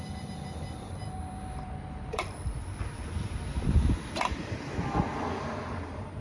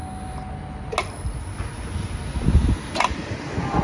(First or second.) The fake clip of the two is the first